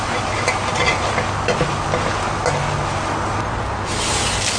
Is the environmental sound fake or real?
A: real